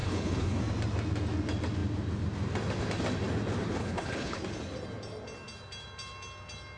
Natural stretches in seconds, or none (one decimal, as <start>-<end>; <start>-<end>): 0.6-3.8; 4.4-6.8